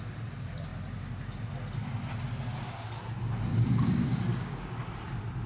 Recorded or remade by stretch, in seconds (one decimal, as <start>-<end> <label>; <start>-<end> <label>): 0.0-3.5 recorded; 3.5-4.9 remade; 4.9-5.5 recorded